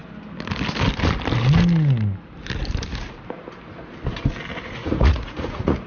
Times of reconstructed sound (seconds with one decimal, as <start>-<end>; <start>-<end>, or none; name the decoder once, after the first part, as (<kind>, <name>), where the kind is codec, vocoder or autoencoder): 4.8-5.9 (vocoder, Vocos)